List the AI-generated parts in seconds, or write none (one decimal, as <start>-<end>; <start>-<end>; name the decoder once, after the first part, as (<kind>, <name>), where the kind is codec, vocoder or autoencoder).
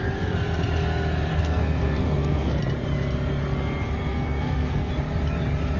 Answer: 1.3-2.6 (codec, SNAC); 4.1-4.9